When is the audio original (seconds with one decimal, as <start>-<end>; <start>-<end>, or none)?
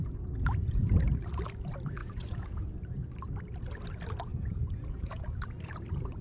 0.0-2.0; 2.7-4.3; 5.4-6.2